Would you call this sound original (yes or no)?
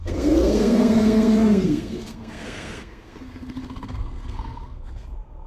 no